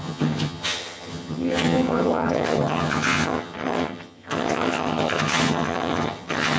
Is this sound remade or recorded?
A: remade